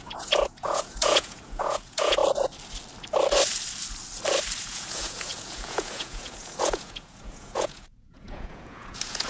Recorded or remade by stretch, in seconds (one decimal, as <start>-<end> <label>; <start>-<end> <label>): 0.0-2.2 remade; 2.2-4.6 recorded; 4.6-9.3 remade

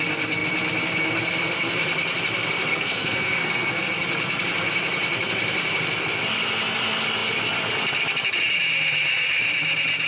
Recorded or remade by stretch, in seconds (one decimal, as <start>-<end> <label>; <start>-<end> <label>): 0.0-2.7 recorded; 2.7-3.9 remade; 3.9-10.1 recorded

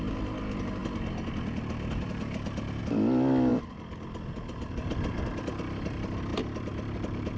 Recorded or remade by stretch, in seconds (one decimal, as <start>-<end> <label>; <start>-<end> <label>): 0.0-3.5 recorded; 3.5-5.4 remade; 5.4-6.3 recorded; 6.3-7.4 remade